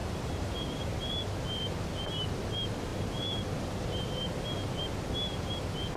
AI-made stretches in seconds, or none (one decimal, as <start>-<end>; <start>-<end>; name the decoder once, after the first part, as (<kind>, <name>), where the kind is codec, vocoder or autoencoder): 0.0-1.0 (vocoder, BigVGAN v2)